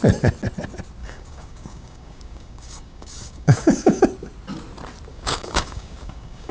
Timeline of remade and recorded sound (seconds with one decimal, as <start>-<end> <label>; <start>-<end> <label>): 0.0-1.0 recorded; 1.0-4.0 remade; 4.0-5.1 recorded; 5.1-6.5 remade

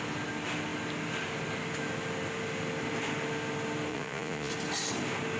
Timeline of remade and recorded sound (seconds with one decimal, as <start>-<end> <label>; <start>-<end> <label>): 0.0-3.9 recorded; 3.9-4.5 remade; 4.5-5.4 recorded

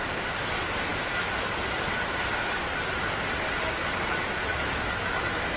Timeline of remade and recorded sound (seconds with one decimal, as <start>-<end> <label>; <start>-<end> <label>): 0.0-4.5 recorded; 4.5-5.6 remade

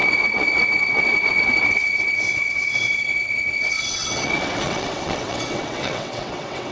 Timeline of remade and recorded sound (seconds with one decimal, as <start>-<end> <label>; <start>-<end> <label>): 0.0-6.7 remade

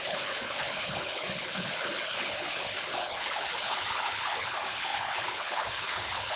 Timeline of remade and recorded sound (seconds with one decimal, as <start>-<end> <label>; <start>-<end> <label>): 0.0-6.4 remade

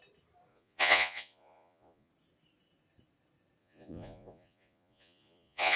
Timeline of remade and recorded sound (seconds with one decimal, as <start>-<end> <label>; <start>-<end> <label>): 0.0-0.5 recorded; 0.5-2.1 remade; 2.1-3.6 recorded; 3.6-5.8 remade

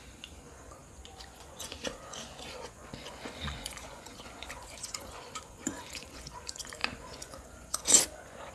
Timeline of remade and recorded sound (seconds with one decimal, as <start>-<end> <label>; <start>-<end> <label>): 0.0-8.5 remade

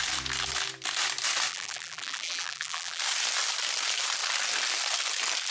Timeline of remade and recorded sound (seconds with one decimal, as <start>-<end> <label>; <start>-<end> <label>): 0.0-1.5 recorded; 1.5-3.0 remade; 3.0-5.5 recorded